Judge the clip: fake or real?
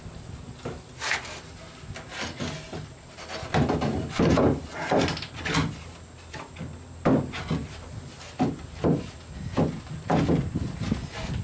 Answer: real